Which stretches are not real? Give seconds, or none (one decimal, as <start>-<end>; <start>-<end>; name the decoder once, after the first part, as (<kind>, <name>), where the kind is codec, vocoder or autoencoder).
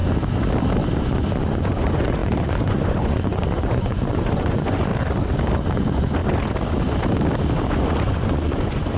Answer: 1.0-4.9 (vocoder, Vocos); 5.5-6.2; 7.7-9.0